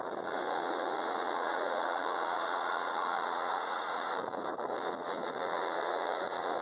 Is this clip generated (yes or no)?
yes